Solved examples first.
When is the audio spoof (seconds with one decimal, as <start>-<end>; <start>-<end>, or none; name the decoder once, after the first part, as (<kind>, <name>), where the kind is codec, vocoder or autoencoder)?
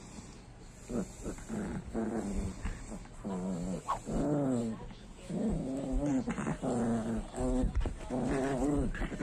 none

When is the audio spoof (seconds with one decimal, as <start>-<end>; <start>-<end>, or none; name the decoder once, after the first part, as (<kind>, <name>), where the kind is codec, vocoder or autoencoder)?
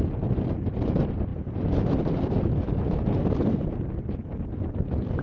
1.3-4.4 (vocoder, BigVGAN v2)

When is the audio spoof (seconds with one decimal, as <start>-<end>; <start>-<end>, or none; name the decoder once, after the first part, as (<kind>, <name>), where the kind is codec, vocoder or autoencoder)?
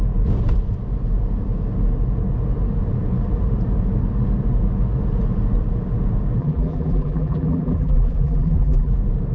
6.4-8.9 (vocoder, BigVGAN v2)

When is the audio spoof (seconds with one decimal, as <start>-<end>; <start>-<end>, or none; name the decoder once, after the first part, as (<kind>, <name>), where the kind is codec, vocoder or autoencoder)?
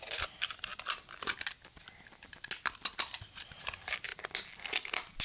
0.0-0.7 (vocoder, BigVGAN v2); 3.2-4.1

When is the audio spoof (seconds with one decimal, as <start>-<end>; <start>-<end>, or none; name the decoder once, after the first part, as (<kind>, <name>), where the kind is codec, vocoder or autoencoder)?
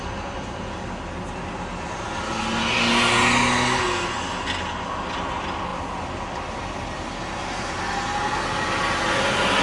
none